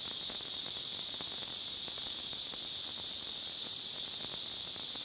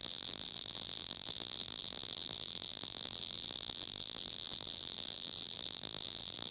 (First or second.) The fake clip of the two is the second